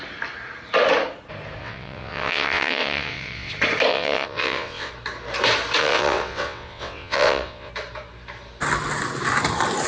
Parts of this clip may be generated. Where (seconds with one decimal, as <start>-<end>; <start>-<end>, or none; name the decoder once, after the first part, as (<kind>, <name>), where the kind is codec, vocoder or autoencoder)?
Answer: 1.6-3.5 (vocoder, WaveNeXt); 3.9-4.9; 5.8-7.7